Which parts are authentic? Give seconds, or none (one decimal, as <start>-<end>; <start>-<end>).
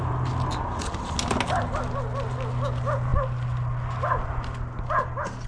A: 0.0-5.5